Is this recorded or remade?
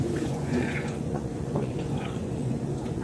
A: remade